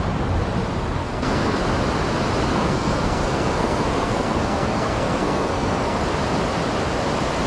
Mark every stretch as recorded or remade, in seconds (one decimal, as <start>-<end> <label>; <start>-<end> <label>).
0.0-1.0 recorded; 1.0-1.6 remade; 1.6-2.5 recorded; 2.5-6.0 remade; 6.0-7.5 recorded